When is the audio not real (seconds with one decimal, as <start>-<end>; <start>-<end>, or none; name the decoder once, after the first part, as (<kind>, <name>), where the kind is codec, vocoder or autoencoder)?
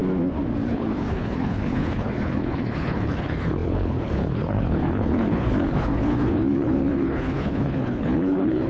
0.7-8.7 (codec, HILCodec)